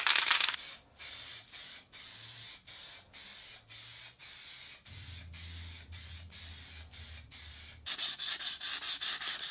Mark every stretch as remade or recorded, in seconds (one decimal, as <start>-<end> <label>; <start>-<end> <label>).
0.0-9.5 recorded